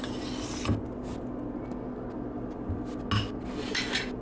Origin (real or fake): real